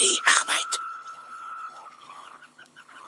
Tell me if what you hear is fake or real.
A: fake